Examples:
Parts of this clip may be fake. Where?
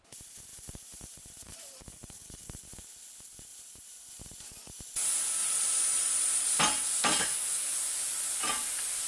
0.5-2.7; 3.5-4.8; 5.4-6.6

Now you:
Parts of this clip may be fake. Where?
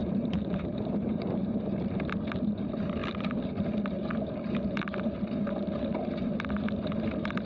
0.0-2.1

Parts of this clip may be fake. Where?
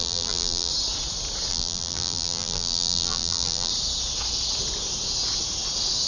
0.0-0.7; 1.5-3.7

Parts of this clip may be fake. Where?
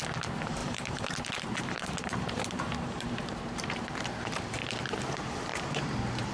0.6-4.4; 5.5-6.3